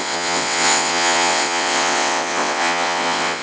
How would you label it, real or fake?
fake